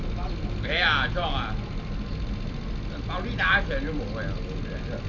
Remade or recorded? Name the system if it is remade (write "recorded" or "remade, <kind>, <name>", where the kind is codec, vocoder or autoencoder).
recorded